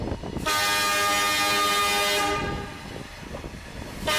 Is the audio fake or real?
real